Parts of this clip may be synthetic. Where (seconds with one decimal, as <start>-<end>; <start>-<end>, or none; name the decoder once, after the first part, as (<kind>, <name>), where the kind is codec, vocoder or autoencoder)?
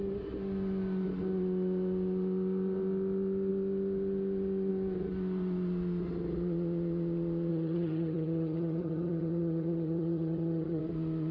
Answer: 7.5-10.8 (vocoder, HiFi-GAN)